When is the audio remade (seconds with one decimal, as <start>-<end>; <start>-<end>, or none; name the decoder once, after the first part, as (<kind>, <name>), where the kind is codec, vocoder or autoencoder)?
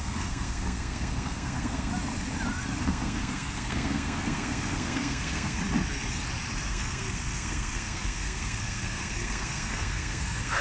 0.0-1.9 (codec, SNAC); 2.8-5.6; 6.7-10.6